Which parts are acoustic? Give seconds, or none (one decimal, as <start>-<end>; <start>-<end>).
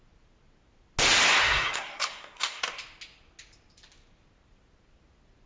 0.0-1.4; 2.6-5.5